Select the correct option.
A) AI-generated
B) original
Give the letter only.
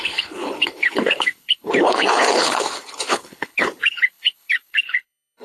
A